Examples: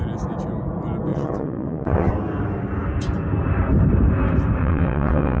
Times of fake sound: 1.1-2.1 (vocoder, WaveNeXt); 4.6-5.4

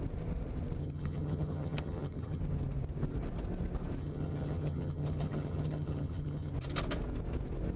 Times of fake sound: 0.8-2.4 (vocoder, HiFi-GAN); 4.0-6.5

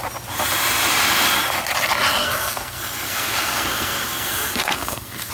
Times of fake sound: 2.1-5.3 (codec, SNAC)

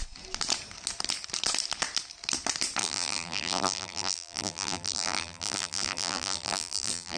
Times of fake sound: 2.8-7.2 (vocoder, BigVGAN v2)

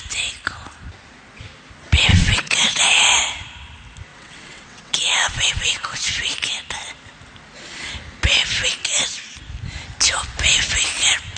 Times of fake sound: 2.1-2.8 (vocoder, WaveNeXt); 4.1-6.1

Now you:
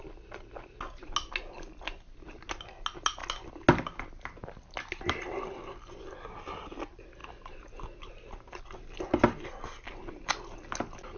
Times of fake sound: none

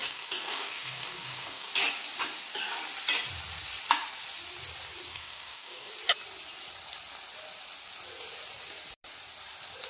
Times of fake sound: 0.0-1.7 (codec, DAC); 5.1-5.9

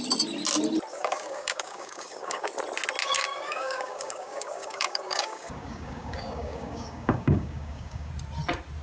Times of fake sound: 0.9-2.5 (codec, DAC); 3.0-8.1